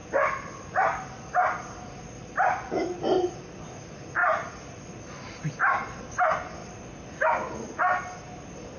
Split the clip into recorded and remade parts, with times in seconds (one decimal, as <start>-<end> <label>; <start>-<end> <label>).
0.0-3.3 remade; 3.3-4.2 recorded; 4.2-4.9 remade; 4.9-6.6 recorded; 6.6-7.2 remade; 7.2-8.8 recorded